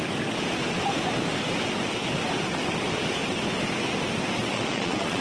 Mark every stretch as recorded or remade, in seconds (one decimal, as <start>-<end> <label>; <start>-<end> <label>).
0.0-4.4 recorded; 4.4-5.2 remade